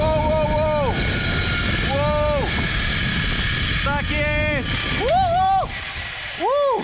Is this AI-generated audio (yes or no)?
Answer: no